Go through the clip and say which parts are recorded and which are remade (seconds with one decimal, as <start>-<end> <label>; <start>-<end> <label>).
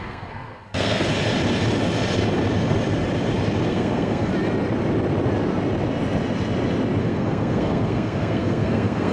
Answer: 0.0-1.1 remade; 1.1-3.7 recorded; 3.7-4.3 remade; 4.3-7.0 recorded; 7.0-9.1 remade